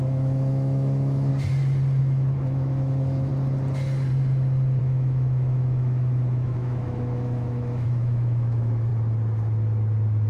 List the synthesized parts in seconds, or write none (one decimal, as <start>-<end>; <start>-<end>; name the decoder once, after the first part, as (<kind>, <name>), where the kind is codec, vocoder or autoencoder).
0.0-1.3 (autoencoder, DAC-VAE); 2.0-3.3; 4.8-8.9